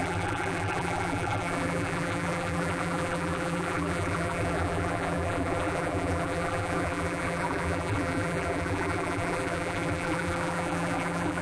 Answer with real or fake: fake